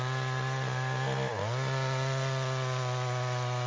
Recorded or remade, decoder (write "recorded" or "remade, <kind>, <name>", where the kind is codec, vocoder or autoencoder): recorded